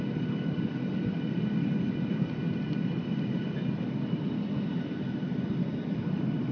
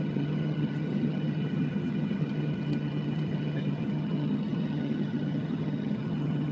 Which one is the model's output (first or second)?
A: second